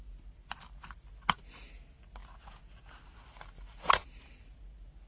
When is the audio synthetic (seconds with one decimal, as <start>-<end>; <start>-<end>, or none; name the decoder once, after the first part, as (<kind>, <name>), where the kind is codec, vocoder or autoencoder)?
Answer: none